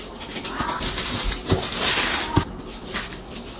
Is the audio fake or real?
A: real